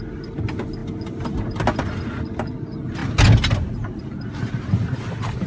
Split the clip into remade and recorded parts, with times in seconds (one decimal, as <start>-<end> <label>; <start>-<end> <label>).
0.0-5.5 recorded